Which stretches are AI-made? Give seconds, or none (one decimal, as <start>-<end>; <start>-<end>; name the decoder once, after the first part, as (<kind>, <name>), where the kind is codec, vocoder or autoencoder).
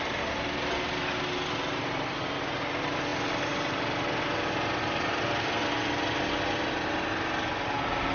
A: none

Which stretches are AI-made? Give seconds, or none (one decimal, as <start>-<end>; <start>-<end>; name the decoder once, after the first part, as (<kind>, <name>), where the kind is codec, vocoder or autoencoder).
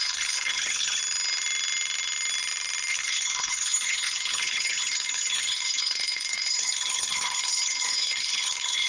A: 0.0-1.0 (codec, HILCodec); 2.9-8.9